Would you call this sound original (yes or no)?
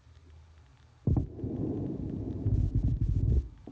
yes